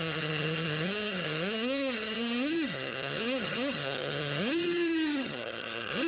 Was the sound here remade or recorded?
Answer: remade